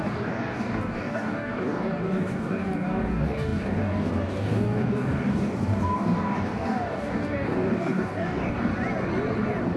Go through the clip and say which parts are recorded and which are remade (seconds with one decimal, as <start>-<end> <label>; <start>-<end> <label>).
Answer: 0.0-8.7 remade; 8.7-9.8 recorded